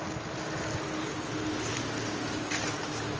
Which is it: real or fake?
real